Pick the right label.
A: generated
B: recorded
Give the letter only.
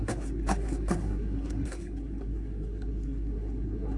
A